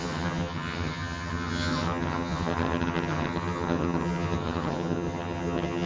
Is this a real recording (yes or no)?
no